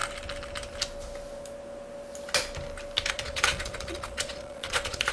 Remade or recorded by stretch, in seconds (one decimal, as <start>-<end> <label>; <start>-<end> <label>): 0.0-3.1 recorded; 3.1-5.1 remade

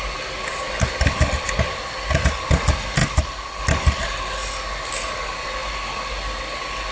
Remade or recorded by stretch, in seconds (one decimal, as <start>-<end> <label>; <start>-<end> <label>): 0.0-6.9 recorded

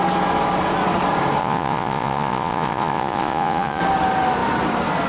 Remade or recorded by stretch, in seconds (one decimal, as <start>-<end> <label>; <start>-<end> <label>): 0.0-1.4 recorded; 1.4-3.8 remade; 3.8-5.1 recorded

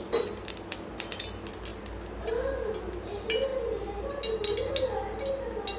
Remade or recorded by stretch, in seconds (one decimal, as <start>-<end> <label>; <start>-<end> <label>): 0.0-5.8 recorded

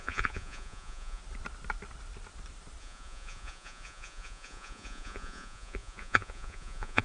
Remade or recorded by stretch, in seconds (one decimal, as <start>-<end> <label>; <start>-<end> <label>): 0.0-1.2 remade; 1.2-2.8 recorded; 2.8-7.0 remade

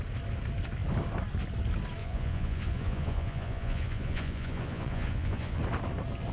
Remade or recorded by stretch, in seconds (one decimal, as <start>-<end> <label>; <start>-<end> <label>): 0.0-2.0 recorded; 2.0-5.6 remade; 5.6-6.3 recorded

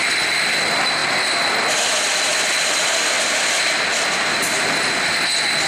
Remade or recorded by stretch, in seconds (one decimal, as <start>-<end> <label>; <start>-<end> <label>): 0.0-5.7 recorded

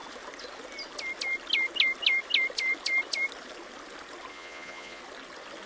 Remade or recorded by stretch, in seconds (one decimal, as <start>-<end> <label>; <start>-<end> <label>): 0.0-4.3 recorded; 4.3-5.0 remade; 5.0-5.7 recorded